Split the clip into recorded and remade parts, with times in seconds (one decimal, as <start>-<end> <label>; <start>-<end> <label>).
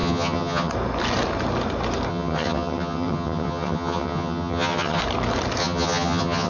0.0-0.7 remade; 0.7-2.1 recorded; 2.1-5.0 remade; 5.0-5.6 recorded; 5.6-6.5 remade